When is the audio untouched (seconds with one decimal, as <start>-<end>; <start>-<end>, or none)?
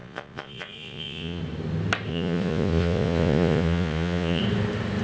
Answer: 1.4-2.1; 4.4-5.0